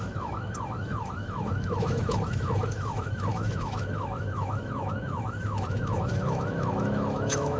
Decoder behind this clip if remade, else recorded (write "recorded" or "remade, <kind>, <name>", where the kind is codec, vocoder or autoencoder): remade, autoencoder, DAC-VAE